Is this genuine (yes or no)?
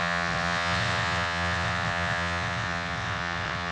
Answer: no